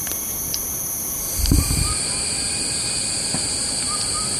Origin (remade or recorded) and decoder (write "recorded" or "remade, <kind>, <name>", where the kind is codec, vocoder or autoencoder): recorded